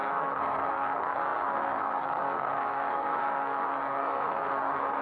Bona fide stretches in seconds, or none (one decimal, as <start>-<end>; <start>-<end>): none